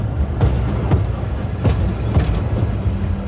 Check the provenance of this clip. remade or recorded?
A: recorded